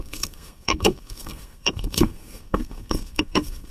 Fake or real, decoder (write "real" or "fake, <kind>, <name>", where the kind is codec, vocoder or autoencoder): fake, codec, SNAC